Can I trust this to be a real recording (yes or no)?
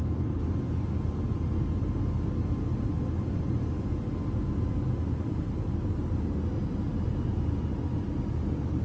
yes